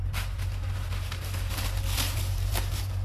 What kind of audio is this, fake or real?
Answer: real